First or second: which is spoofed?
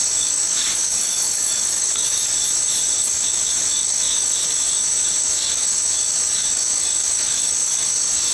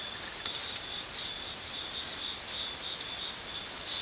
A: first